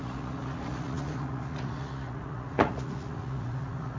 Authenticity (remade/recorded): remade